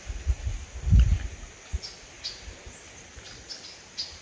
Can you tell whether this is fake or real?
real